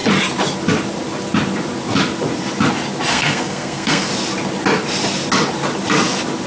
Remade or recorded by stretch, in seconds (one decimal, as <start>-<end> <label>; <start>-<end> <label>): 0.0-3.1 recorded; 3.1-4.1 remade; 4.1-6.5 recorded